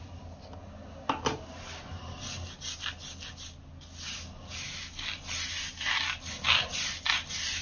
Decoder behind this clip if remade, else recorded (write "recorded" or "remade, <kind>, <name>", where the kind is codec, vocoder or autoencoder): recorded